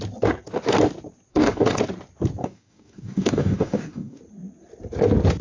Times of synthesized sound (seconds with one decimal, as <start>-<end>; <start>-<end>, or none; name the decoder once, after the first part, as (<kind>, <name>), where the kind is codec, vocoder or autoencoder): 1.3-1.8 (codec, DAC); 2.4-4.2